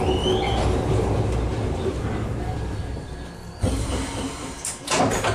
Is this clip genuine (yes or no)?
yes